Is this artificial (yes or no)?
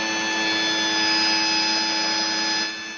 no